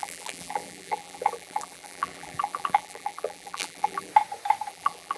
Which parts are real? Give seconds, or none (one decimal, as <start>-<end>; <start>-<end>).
4.1-4.7